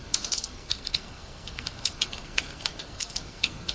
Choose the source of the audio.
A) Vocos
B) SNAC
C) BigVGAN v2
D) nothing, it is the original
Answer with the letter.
B